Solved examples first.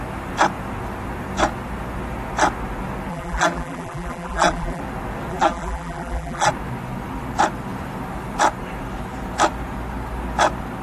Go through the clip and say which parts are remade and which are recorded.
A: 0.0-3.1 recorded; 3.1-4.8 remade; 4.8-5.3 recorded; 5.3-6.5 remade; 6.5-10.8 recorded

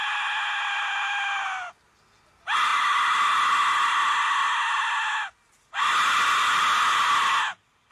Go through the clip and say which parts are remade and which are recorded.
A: 0.0-7.9 recorded

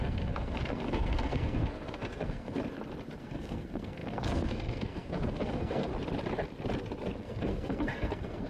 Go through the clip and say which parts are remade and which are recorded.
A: 0.0-2.6 remade; 2.6-3.2 recorded; 3.2-5.9 remade; 5.9-7.2 recorded; 7.2-8.5 remade

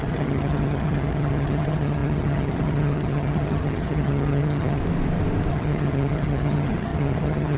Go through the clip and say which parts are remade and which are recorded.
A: 0.0-4.8 remade; 4.8-5.5 recorded; 5.5-7.6 remade

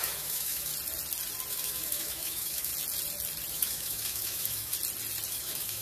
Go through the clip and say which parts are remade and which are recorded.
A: 0.0-0.7 remade; 0.7-1.5 recorded; 1.5-2.7 remade; 2.7-3.5 recorded; 3.5-4.7 remade; 4.7-5.3 recorded; 5.3-5.8 remade

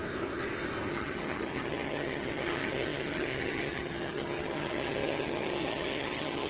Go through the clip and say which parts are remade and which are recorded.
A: 0.0-0.9 recorded; 0.9-6.5 remade